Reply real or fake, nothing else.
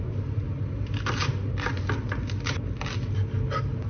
real